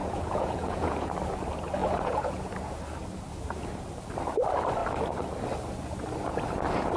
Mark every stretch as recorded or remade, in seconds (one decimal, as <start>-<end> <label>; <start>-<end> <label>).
0.0-1.1 remade; 1.1-1.8 recorded; 1.8-2.5 remade; 2.5-7.0 recorded